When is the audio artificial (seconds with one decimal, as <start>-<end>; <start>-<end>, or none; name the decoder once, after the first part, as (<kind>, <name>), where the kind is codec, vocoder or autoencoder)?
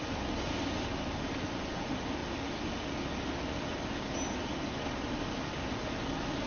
none